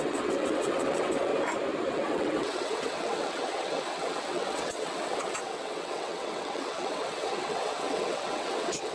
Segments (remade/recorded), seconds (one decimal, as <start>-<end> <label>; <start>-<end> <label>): 0.0-1.3 remade; 1.3-1.9 recorded; 1.9-8.9 remade

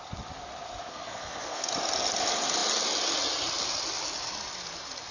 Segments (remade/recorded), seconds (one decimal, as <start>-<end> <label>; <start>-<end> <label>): 0.0-0.9 recorded; 0.9-1.7 remade; 1.7-5.1 recorded